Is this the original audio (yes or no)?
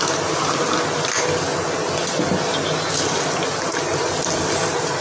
yes